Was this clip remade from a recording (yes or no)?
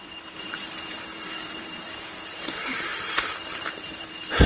yes